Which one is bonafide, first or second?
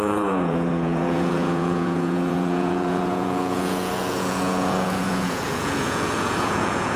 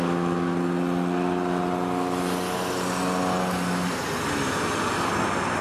second